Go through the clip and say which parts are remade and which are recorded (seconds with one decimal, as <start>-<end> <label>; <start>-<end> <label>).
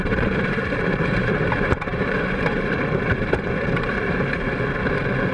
0.0-4.4 remade; 4.4-5.3 recorded